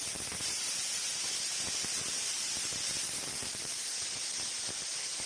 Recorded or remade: recorded